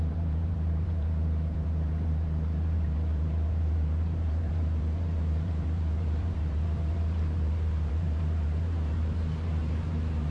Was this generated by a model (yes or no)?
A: yes